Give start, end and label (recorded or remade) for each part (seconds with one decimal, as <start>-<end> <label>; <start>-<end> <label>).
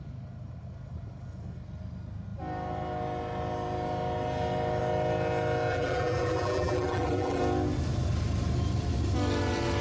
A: 0.0-5.7 recorded; 5.7-7.4 remade; 7.4-9.8 recorded